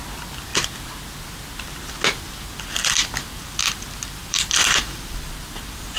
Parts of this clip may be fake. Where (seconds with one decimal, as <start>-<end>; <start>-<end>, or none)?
4.2-6.0